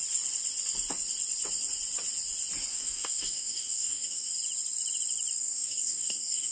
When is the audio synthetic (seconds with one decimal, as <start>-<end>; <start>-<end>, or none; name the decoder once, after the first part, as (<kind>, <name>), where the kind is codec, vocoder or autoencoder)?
2.7-4.3 (codec, DAC); 5.4-6.5